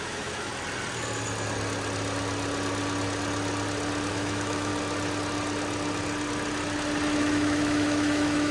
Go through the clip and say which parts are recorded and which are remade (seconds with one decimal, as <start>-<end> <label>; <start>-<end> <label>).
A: 0.0-0.5 remade; 0.5-4.1 recorded; 4.1-4.7 remade; 4.7-7.2 recorded; 7.2-8.5 remade

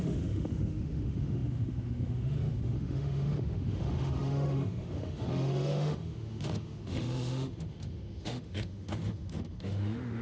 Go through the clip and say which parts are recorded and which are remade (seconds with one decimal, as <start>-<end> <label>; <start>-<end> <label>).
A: 0.0-10.2 remade

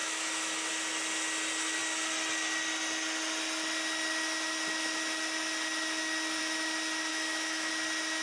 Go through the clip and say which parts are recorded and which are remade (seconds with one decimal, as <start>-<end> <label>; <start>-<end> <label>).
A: 0.0-0.7 remade; 0.7-7.1 recorded; 7.1-7.7 remade; 7.7-8.2 recorded

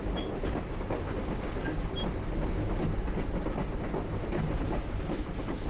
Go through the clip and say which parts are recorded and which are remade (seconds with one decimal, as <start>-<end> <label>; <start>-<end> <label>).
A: 0.0-5.7 recorded

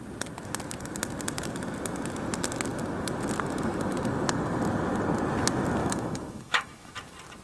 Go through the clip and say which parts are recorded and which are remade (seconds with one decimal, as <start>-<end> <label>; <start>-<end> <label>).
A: 0.0-5.8 recorded; 5.8-6.9 remade; 6.9-7.4 recorded